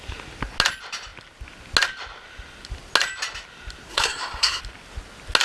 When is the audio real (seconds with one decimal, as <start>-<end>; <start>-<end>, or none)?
0.0-3.9; 4.6-5.4